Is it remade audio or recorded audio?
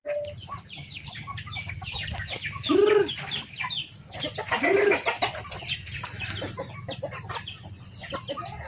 recorded